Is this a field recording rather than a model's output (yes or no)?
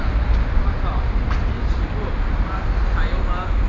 yes